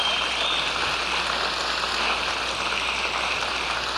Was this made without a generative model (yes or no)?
yes